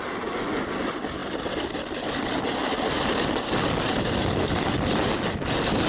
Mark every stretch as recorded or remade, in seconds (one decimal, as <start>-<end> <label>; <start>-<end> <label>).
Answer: 0.0-5.9 recorded